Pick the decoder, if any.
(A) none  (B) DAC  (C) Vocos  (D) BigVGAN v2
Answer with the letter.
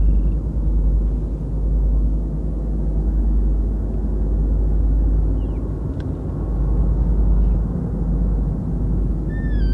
A